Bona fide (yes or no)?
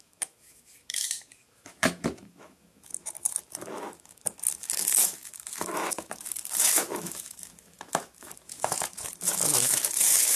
no